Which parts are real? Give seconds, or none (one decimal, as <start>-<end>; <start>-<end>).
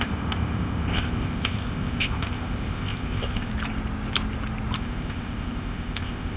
3.5-4.8